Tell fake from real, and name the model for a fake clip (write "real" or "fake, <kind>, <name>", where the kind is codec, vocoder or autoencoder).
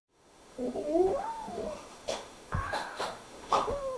fake, autoencoder, DAC-VAE